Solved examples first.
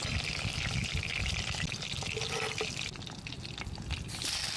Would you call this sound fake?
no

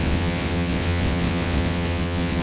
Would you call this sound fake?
yes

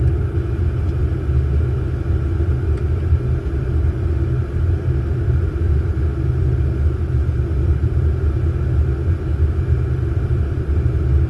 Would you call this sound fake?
no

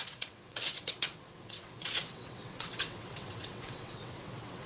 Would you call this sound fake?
yes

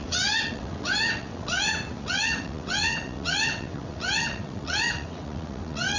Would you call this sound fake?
yes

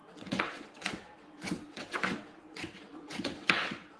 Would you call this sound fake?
yes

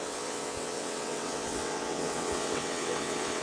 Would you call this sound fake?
yes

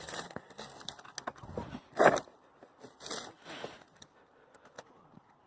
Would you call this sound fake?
no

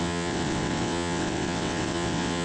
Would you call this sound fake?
yes